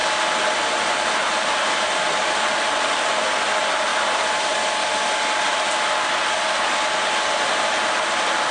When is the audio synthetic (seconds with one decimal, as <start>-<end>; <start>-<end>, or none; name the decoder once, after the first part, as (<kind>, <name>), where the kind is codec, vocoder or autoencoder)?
none